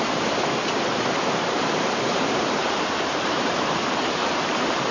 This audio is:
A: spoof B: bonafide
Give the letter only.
A